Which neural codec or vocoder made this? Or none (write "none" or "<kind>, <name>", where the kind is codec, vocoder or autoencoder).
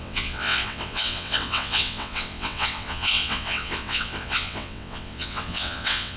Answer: vocoder, WaveNeXt